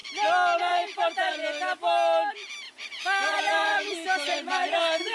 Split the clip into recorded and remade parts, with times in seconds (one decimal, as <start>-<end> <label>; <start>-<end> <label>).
0.0-0.6 recorded; 0.6-1.4 remade; 1.4-2.7 recorded; 2.7-5.1 remade